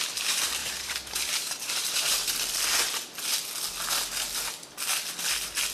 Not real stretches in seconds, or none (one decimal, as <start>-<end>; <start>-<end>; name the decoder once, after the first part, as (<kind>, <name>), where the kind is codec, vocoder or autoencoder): 0.6-2.3 (vocoder, BigVGAN v2)